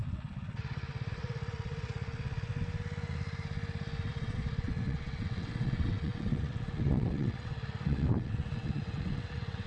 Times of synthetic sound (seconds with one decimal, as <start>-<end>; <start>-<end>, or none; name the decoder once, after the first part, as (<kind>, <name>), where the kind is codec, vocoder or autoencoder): 0.0-2.5 (vocoder, WaveNeXt); 4.1-9.7